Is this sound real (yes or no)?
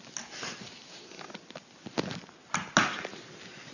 yes